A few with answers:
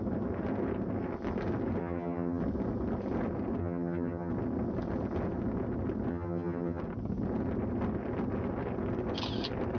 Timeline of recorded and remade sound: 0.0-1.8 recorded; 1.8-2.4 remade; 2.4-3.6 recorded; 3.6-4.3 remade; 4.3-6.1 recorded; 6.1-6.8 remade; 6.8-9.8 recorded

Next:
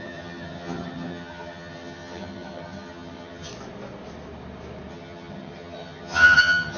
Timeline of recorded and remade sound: 0.0-3.5 remade; 3.5-4.9 recorded; 4.9-6.8 remade

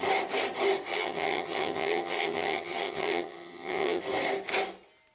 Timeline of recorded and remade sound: 0.0-0.9 recorded; 0.9-4.0 remade; 4.0-5.1 recorded

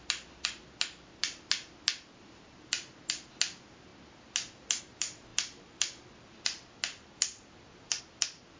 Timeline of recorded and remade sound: 0.0-8.6 recorded

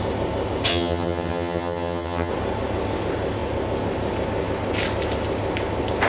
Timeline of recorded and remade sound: 0.0-0.7 recorded; 0.7-2.3 remade; 2.3-6.1 recorded

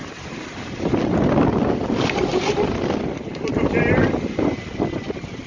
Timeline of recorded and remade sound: 0.0-5.5 recorded

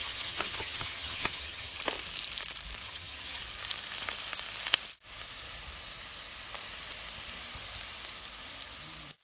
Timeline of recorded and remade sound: 0.0-1.8 remade; 1.8-2.8 recorded; 2.8-3.4 remade; 3.4-9.2 recorded

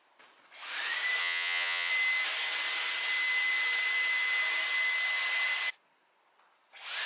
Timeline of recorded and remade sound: 0.0-1.2 recorded; 1.2-1.9 remade; 1.9-7.1 recorded